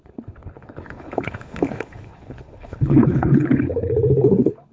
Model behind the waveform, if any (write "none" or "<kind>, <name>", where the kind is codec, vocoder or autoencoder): codec, HILCodec